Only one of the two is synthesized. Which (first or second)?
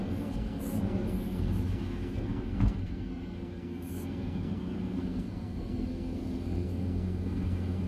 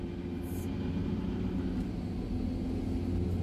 first